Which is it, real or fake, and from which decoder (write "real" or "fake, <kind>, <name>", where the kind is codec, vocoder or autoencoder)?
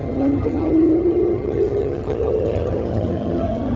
fake, vocoder, HiFi-GAN